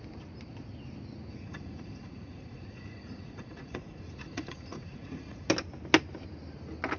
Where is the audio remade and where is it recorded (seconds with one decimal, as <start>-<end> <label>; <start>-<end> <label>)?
0.0-1.3 recorded; 1.3-5.5 remade; 5.5-7.0 recorded